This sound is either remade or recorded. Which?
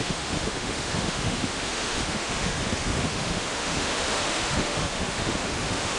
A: remade